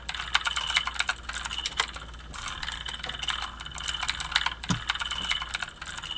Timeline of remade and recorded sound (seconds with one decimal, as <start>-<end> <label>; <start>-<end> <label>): 0.0-6.2 recorded